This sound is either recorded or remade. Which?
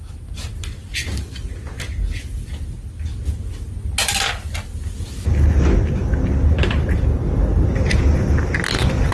recorded